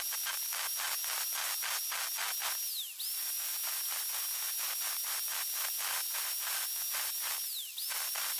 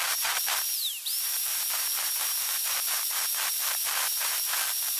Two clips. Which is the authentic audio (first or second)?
first